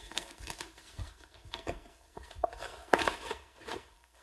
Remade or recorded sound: remade